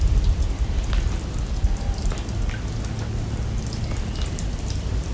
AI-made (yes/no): no